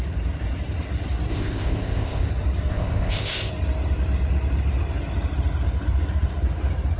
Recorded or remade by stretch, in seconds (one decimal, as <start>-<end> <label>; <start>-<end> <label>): 0.0-1.3 recorded; 1.3-2.3 remade; 2.3-2.7 recorded; 2.7-3.5 remade; 3.5-7.0 recorded